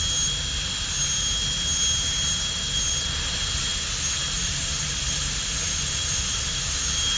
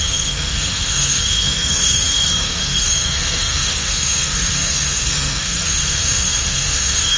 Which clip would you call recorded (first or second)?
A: first